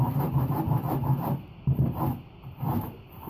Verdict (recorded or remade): recorded